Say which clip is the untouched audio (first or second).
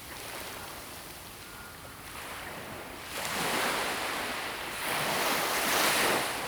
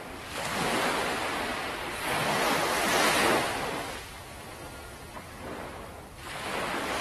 second